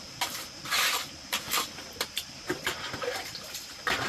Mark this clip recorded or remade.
remade